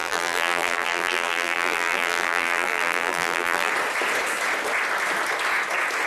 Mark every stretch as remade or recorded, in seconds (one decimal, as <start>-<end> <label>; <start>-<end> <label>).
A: 0.0-3.7 remade; 3.7-6.1 recorded